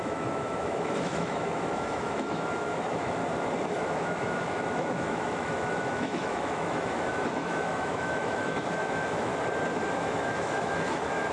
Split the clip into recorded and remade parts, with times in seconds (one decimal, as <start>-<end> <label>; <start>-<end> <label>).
0.0-3.2 remade; 3.2-3.7 recorded; 3.7-9.3 remade; 9.3-9.9 recorded; 9.9-11.3 remade